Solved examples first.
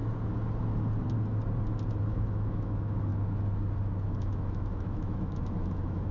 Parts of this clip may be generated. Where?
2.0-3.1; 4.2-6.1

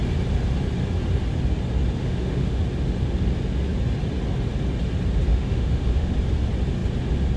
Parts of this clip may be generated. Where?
2.0-2.6; 5.3-6.1